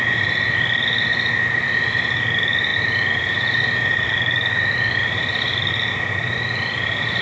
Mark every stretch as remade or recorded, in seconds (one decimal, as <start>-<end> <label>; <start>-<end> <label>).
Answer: 0.0-7.2 recorded